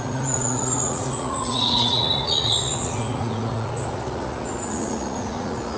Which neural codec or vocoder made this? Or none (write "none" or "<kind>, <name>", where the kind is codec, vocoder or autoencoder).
vocoder, Vocos